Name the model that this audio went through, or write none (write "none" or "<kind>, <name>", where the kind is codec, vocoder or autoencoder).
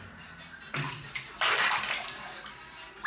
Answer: none